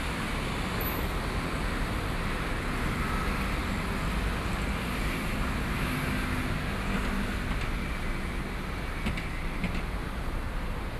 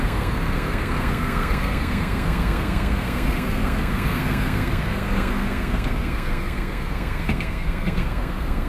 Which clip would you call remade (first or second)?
second